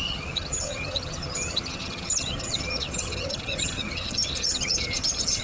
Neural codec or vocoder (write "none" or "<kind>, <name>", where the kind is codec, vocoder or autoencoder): vocoder, HiFi-GAN